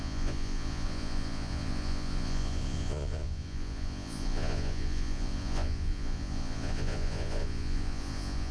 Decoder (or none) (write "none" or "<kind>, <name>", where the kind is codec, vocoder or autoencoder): vocoder, Vocos